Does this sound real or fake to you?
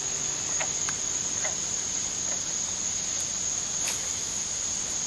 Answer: real